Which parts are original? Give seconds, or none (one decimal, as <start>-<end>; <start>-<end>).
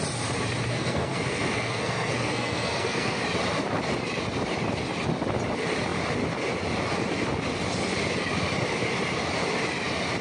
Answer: 0.0-0.7; 3.2-10.2